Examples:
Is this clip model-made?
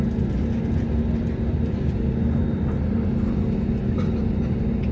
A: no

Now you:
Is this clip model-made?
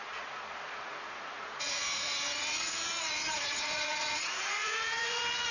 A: yes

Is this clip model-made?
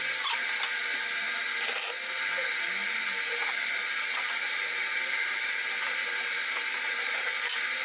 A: no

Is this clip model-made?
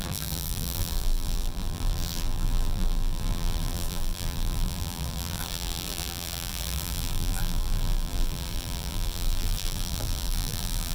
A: yes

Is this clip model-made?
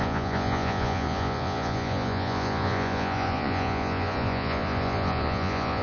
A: yes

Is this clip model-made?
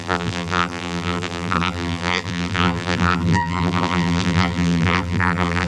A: yes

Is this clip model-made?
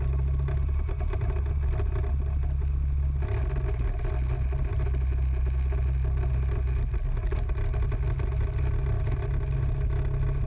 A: no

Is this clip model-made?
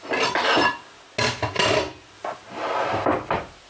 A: no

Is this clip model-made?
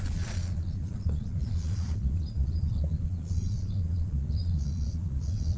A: yes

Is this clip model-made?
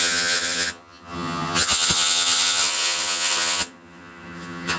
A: yes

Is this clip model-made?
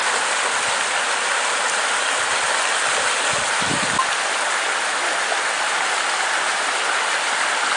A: no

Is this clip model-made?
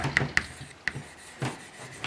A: no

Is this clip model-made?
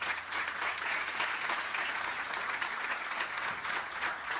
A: yes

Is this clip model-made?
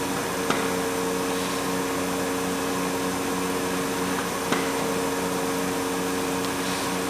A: no